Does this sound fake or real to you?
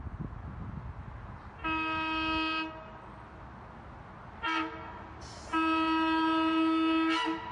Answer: real